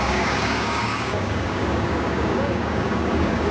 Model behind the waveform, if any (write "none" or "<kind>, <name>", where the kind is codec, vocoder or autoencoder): codec, DAC